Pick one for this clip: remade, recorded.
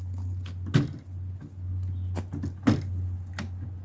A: recorded